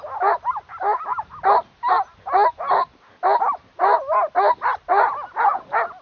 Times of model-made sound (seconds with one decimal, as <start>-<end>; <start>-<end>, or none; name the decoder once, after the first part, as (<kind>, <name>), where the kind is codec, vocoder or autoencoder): none